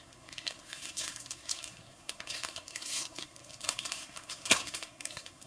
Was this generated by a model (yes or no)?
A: yes